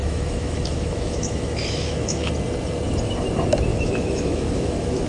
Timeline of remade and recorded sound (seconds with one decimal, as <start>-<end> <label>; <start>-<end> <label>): 0.0-2.3 remade; 2.3-3.7 recorded; 3.7-5.1 remade